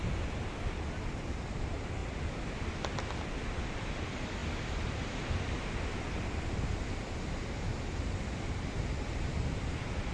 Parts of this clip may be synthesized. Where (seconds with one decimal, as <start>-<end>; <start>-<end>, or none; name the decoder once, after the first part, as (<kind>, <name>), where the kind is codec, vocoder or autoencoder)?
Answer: 0.0-2.0 (vocoder, BigVGAN v2); 3.6-10.1